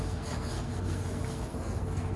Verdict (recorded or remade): remade